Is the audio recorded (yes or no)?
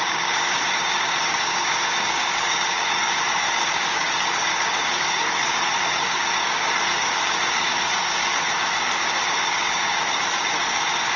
no